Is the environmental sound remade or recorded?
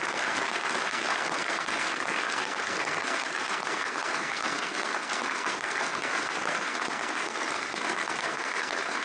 remade